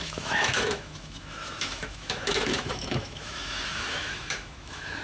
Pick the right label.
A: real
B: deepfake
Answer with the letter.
B